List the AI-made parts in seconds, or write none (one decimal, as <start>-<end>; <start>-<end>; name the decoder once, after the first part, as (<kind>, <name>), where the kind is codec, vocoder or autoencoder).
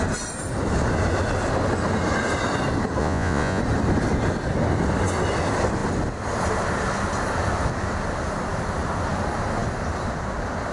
3.0-3.6 (vocoder, Vocos)